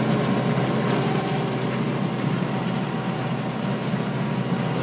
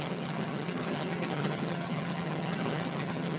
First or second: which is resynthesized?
second